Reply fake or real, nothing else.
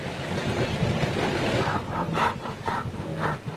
real